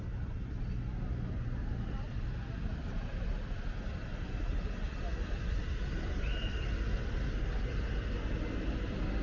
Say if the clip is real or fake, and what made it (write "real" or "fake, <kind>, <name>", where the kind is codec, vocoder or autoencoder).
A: real